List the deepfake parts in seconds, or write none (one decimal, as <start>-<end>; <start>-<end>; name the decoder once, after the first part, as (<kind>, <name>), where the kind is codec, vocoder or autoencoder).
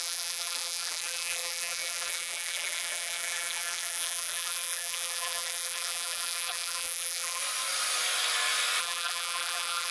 0.0-7.4 (vocoder, BigVGAN v2); 8.8-9.9